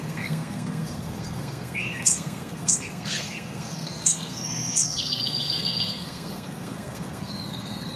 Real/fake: fake